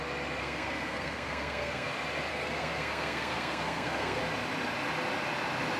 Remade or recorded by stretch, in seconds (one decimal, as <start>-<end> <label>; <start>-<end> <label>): 0.0-0.4 recorded; 0.4-1.9 remade; 1.9-2.3 recorded; 2.3-4.2 remade; 4.2-5.8 recorded